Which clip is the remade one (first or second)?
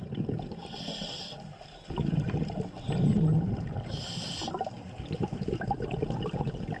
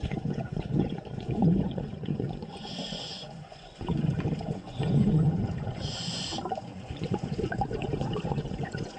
second